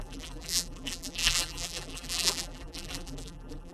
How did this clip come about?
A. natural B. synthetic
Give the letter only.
B